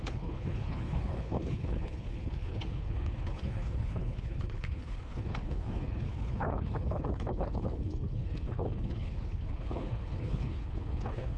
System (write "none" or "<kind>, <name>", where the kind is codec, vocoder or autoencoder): codec, HILCodec